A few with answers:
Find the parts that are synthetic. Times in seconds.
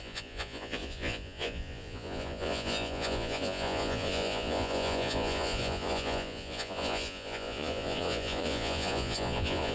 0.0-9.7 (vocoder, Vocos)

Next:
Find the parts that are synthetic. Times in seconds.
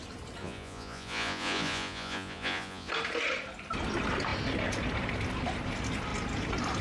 0.4-2.9 (vocoder, Vocos)